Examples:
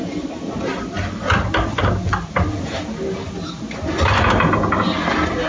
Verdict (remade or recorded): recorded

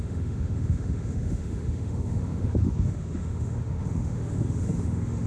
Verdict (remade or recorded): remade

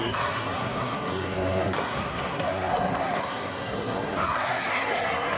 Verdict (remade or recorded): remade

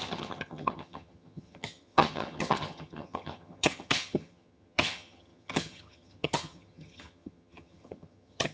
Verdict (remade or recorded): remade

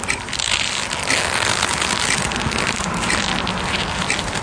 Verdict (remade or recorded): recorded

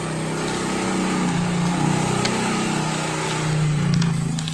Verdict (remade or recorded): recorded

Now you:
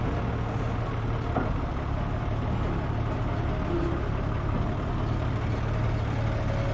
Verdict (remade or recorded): recorded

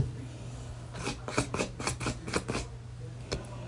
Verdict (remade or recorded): recorded